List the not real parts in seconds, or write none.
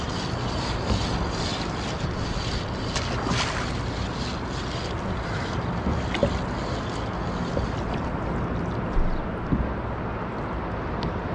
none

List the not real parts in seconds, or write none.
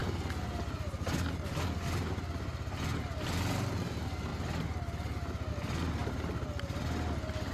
none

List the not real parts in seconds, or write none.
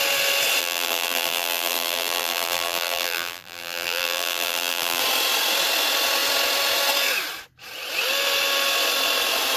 0.6-5.0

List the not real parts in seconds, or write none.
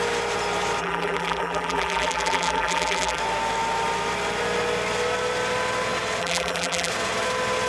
0.8-3.2; 6.2-6.9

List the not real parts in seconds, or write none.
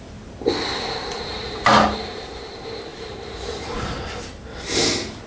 1.3-2.4; 2.9-4.2